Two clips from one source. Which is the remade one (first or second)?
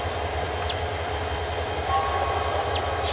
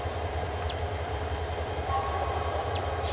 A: second